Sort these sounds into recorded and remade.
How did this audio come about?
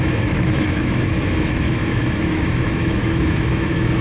remade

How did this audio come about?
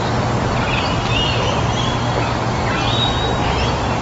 recorded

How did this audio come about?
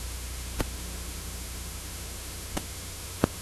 remade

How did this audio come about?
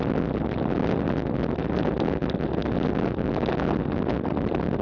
recorded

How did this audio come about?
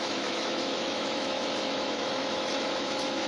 remade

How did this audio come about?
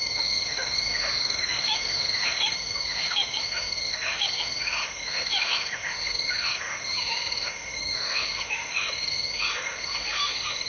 remade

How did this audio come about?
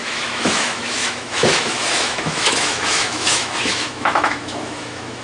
remade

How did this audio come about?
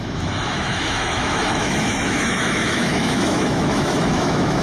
remade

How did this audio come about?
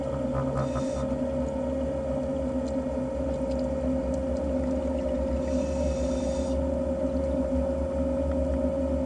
recorded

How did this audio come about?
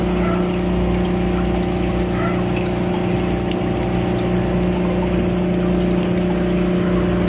recorded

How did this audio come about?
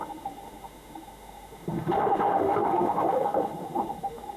remade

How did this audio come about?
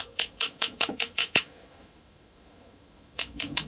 remade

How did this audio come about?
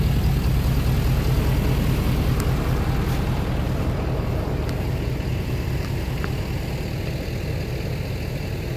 recorded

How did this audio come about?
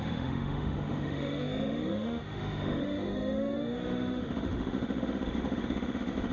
remade